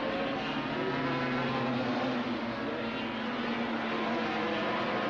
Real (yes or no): yes